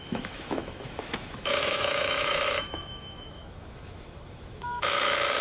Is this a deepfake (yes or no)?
yes